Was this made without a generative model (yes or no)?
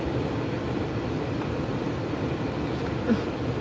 yes